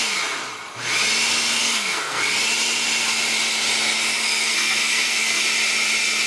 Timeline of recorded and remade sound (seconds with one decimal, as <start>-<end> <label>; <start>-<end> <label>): 0.0-1.6 recorded; 1.6-2.2 remade; 2.2-4.2 recorded; 4.2-5.4 remade; 5.4-6.3 recorded